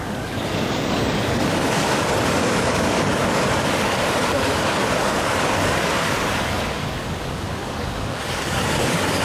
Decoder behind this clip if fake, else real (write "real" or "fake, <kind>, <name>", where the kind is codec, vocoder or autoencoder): fake, codec, DAC